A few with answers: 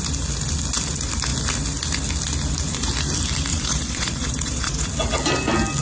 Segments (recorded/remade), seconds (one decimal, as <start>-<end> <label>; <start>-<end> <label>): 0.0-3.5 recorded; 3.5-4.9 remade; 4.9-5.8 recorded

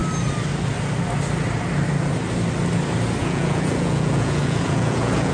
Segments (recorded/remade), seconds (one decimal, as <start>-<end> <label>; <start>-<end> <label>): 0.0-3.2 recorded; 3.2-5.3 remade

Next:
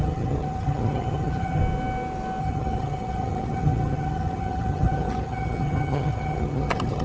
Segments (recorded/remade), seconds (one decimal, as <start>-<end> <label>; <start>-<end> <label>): 0.0-1.6 remade; 1.6-2.4 recorded; 2.4-7.0 remade